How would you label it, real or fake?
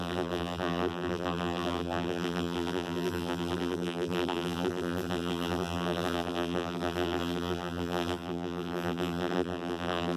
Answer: fake